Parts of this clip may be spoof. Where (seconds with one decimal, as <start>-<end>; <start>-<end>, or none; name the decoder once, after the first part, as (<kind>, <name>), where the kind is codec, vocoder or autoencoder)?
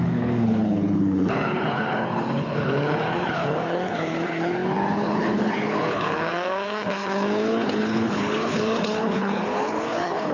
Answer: 0.0-10.3 (codec, HILCodec)